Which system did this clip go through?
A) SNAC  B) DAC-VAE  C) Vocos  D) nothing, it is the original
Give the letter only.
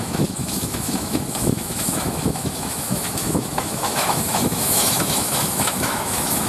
B